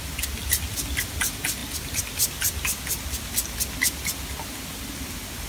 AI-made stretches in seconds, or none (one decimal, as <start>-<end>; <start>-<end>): none

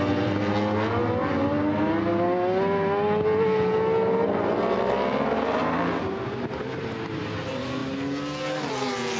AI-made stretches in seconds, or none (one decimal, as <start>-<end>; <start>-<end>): none

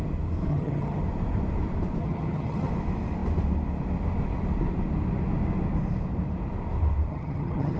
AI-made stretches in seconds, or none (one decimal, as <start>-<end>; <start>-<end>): 0.5-1.0; 2.0-2.7; 7.1-7.8

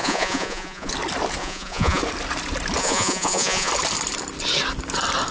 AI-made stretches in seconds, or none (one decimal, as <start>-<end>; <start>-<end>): 0.0-0.9; 1.4-2.0; 2.8-3.7